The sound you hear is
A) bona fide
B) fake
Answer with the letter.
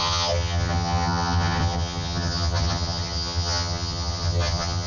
B